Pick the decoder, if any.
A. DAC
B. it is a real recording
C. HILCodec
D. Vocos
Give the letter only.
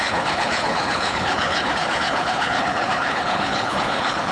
C